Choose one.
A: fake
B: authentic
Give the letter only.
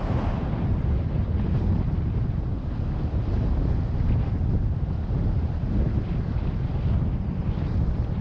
B